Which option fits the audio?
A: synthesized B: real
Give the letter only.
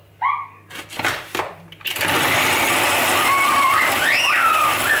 B